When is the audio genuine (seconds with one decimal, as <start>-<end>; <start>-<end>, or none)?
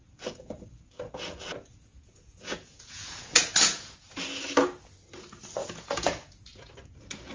4.4-5.6; 6.7-7.3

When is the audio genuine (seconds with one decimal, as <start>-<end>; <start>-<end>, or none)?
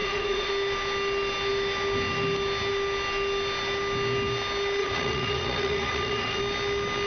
0.5-4.8; 6.4-7.1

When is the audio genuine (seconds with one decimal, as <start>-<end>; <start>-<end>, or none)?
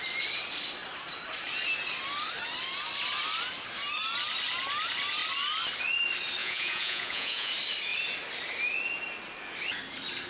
0.0-6.4; 7.5-10.3